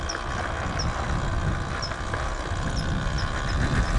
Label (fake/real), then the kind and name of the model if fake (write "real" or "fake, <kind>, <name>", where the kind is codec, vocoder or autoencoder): real